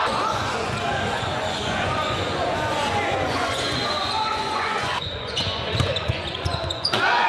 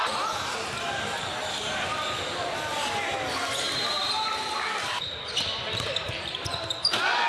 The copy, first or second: first